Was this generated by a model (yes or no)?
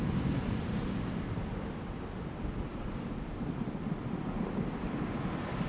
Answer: no